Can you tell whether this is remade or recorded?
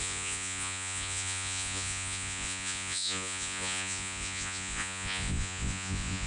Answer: remade